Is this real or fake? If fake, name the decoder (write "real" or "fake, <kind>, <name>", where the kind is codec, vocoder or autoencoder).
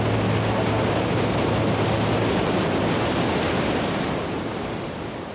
real